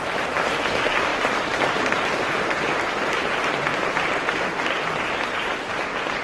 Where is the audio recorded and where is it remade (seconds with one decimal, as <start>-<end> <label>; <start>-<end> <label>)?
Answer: 0.0-6.2 recorded